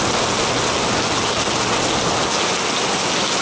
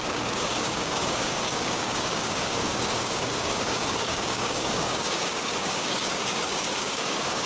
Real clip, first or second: first